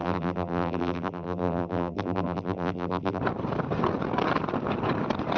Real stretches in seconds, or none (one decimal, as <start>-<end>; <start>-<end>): 3.2-5.4